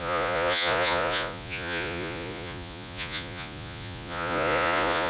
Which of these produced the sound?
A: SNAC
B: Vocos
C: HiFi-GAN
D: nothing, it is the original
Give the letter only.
B